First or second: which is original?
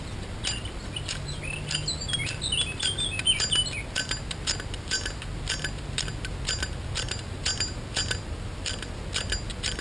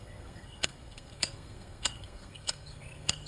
first